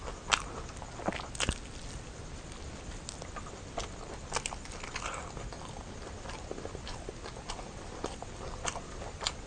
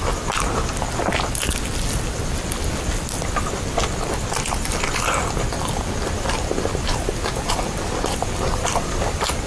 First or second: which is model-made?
second